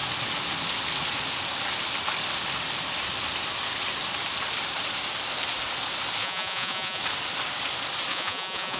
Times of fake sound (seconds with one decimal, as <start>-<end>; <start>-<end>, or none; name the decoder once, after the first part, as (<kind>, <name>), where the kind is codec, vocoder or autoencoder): 6.2-7.0 (vocoder, Vocos); 8.1-8.8